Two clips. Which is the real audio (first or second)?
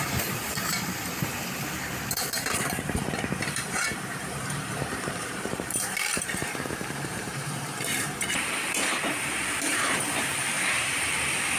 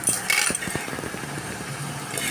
second